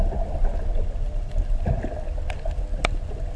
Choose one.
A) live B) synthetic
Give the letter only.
A